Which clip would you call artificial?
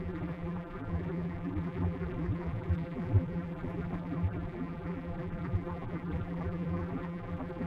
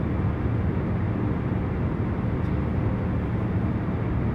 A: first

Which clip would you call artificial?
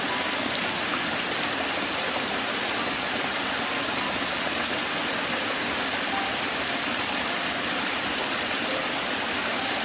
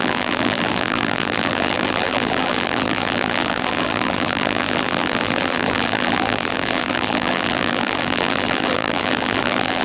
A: second